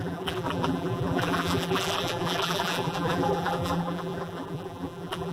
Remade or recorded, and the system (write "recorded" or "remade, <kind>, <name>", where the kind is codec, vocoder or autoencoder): remade, vocoder, BigVGAN v2